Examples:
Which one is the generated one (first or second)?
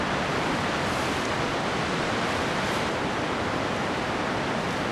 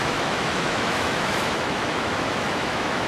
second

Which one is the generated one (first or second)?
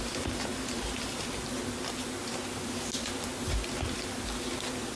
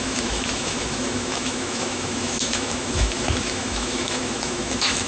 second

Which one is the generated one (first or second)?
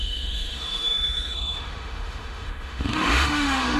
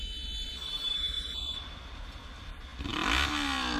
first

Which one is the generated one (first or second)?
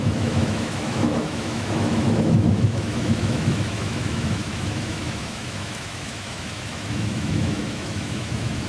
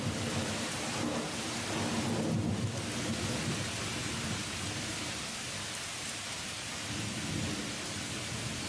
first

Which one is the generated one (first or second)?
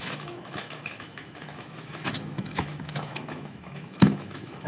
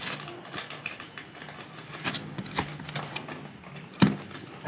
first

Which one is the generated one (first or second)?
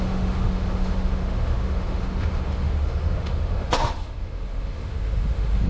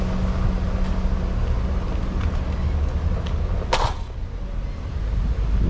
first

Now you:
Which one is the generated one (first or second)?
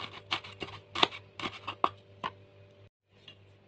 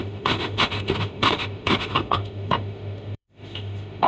second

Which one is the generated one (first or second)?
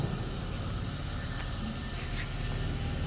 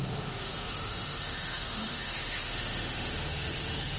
second